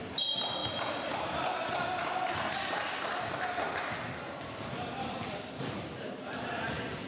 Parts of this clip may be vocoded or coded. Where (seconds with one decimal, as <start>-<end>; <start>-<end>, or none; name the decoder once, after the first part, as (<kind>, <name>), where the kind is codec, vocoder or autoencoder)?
none